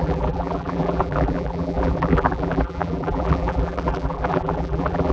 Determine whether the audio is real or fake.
fake